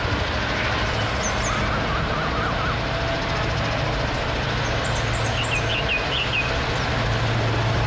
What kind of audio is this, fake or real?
real